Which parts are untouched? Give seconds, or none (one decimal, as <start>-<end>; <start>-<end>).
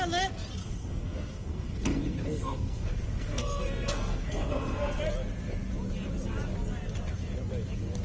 0.0-0.6; 5.0-8.0